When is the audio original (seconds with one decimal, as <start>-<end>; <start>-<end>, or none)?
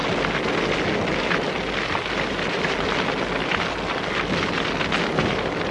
0.0-5.7